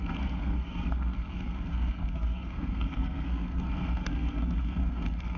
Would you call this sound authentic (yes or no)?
no